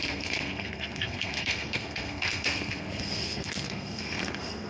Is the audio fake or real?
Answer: fake